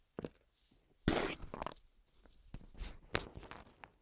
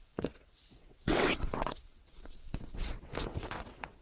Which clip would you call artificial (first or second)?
second